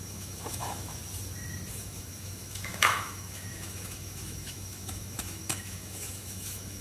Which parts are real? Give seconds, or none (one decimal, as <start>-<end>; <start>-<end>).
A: 1.0-1.7